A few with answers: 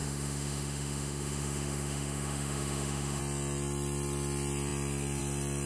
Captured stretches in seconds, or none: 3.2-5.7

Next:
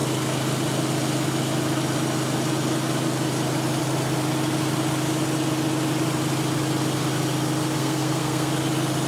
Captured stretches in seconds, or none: 0.0-7.8; 8.5-9.1

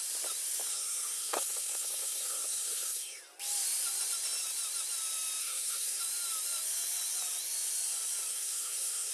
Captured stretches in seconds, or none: 0.0-0.7; 3.2-5.4; 6.0-8.3

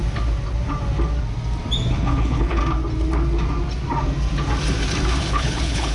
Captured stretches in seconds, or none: 0.0-1.9; 2.6-5.2

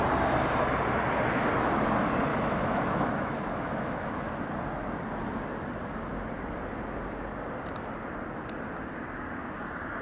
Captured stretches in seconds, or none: 0.0-2.3; 4.3-10.0

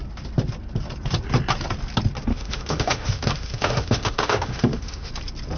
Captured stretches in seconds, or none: 0.0-2.3; 5.1-5.6

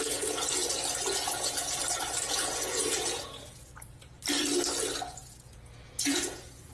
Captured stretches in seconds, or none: 0.6-1.3; 1.8-2.3; 4.2-5.2

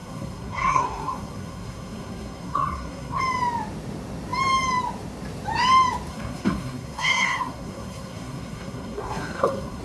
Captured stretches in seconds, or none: 3.2-6.1